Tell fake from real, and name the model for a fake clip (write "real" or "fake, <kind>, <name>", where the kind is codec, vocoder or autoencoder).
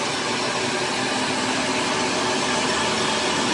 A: real